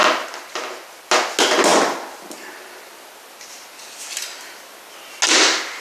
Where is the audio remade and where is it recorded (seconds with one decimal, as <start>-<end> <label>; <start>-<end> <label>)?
0.0-5.8 recorded

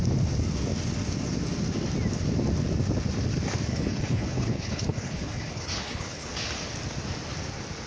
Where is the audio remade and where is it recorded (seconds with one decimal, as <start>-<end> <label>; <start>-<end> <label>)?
0.0-3.7 recorded; 3.7-6.3 remade; 6.3-7.9 recorded